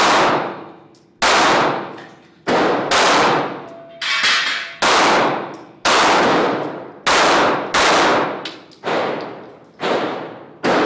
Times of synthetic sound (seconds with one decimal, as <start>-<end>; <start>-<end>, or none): none